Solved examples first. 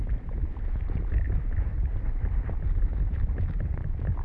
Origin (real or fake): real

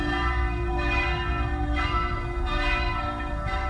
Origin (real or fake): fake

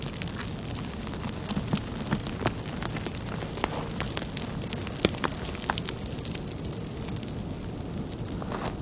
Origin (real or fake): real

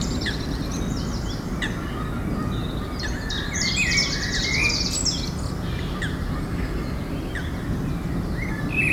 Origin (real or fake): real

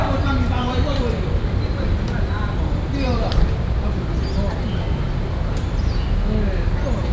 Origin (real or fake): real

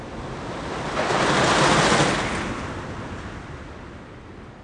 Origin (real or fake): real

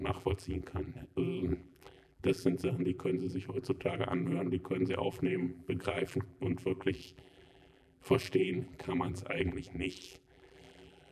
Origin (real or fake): fake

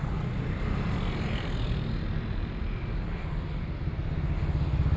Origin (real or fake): real